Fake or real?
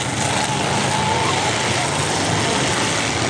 real